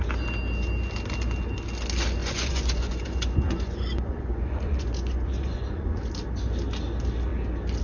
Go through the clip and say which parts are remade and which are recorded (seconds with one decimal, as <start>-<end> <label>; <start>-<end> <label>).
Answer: 0.0-2.2 recorded; 2.2-6.1 remade; 6.1-7.8 recorded

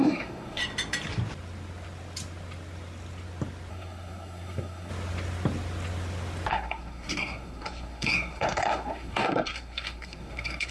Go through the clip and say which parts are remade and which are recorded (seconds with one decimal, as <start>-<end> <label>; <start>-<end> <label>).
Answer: 0.0-0.6 remade; 0.6-3.7 recorded; 3.7-4.9 remade; 4.9-6.5 recorded; 6.5-10.7 remade

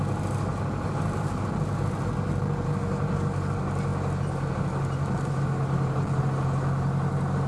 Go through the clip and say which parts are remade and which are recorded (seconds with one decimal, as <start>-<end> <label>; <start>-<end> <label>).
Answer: 0.0-7.5 recorded